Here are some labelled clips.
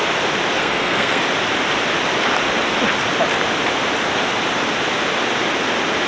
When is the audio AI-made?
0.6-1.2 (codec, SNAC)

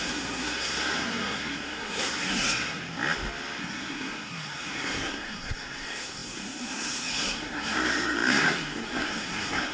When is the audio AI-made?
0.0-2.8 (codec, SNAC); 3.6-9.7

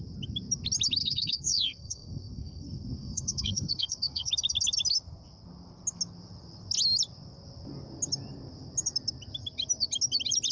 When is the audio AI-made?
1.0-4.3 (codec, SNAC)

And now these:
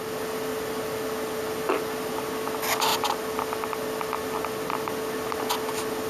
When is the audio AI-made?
none

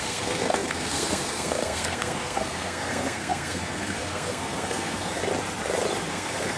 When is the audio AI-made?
0.0-5.2 (codec, SNAC); 6.1-6.6

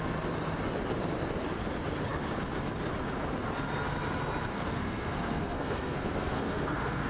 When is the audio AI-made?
4.5-7.1 (codec, SNAC)

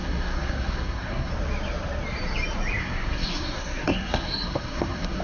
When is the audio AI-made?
0.0-1.3 (codec, SNAC); 2.8-5.2

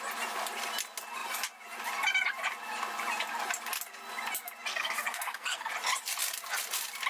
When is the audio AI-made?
4.7-5.7 (codec, SNAC)